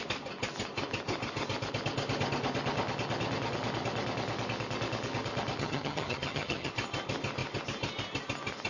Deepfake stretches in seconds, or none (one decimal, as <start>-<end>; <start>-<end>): 5.6-6.7